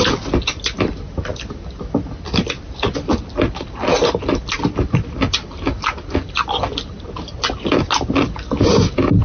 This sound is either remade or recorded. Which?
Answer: recorded